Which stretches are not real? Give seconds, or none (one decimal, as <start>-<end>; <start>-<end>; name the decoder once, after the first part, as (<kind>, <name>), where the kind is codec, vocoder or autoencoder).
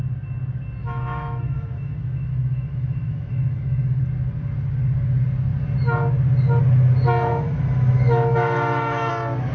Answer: 0.8-4.0 (autoencoder, DAC-VAE); 7.3-9.1